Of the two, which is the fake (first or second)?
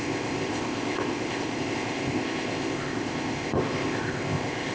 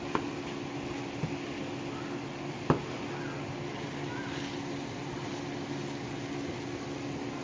first